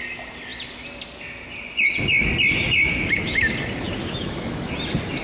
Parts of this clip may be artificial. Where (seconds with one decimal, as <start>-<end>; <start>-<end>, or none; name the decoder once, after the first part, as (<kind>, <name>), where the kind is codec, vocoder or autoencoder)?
2.9-3.5 (autoencoder, DAC-VAE); 4.0-4.7